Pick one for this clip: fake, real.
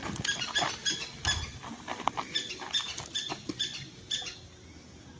real